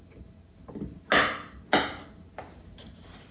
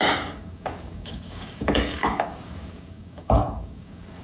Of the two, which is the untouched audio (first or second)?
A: first